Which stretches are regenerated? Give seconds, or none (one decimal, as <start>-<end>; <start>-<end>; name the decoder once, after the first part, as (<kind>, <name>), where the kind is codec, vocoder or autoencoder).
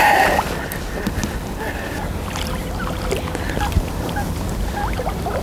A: none